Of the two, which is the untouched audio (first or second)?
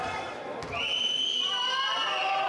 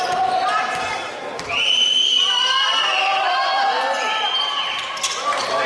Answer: first